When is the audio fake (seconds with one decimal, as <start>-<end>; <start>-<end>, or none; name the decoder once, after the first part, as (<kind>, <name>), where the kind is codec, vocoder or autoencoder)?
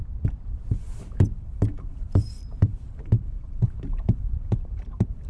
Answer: 0.7-5.3 (vocoder, BigVGAN v2)